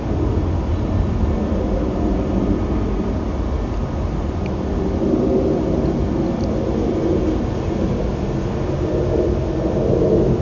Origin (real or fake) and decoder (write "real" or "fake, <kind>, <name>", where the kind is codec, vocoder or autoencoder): real